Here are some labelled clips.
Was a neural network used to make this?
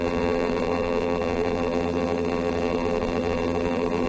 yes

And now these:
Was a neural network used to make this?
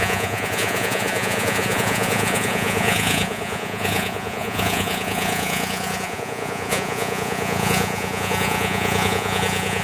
yes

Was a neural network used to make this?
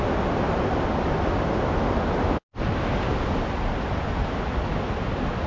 no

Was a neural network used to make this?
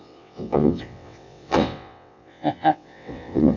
yes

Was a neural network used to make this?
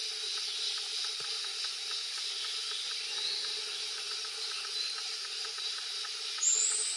no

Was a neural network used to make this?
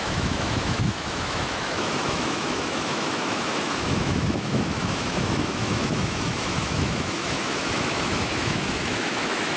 yes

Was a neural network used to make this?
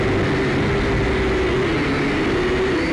no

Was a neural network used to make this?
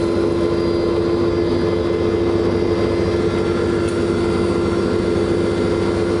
no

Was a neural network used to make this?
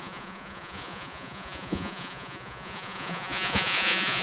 yes